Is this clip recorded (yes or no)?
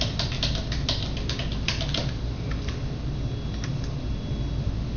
yes